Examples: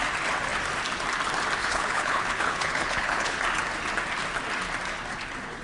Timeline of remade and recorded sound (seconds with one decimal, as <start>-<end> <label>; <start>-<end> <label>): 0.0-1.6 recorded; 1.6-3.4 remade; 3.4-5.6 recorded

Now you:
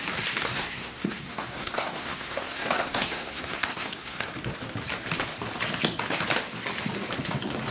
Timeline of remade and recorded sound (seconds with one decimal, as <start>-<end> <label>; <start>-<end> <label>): 0.0-0.5 recorded; 0.5-4.3 remade; 4.3-7.7 recorded

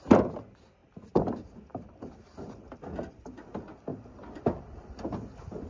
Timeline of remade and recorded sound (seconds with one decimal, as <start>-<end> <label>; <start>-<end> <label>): 0.0-3.9 recorded; 3.9-5.0 remade; 5.0-5.7 recorded

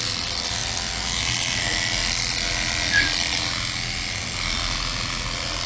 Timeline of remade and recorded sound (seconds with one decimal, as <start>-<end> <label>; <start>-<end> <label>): 0.0-5.7 recorded

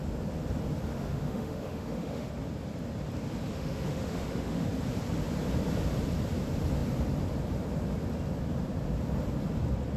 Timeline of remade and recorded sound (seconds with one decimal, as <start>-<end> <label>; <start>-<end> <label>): 0.0-0.9 recorded; 0.9-2.3 remade; 2.3-3.5 recorded; 3.5-4.7 remade; 4.7-10.0 recorded

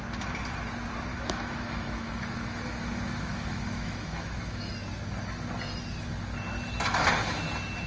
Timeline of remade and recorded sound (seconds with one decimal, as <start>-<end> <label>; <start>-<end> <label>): 0.0-1.1 recorded; 1.1-4.7 remade; 4.7-7.9 recorded

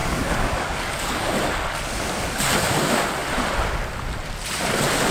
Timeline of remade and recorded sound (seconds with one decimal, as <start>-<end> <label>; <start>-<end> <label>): 0.0-1.3 remade; 1.3-5.1 recorded